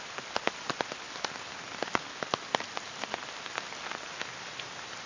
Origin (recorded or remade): recorded